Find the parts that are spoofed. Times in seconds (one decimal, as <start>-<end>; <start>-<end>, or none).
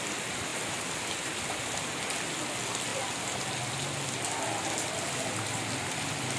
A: none